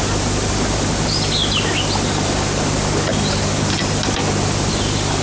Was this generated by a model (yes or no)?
no